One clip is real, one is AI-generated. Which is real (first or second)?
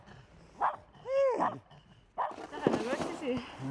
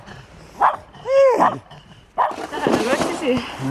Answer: first